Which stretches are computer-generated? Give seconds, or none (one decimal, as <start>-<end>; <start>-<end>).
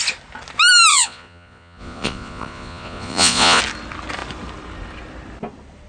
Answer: 0.9-3.6